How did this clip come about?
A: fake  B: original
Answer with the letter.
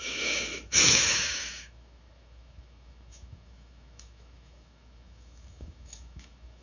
A